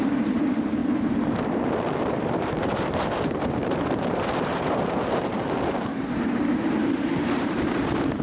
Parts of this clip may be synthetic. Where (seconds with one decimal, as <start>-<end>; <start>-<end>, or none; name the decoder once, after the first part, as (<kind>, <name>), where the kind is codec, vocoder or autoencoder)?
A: 0.0-0.8 (vocoder, BigVGAN v2); 2.1-8.2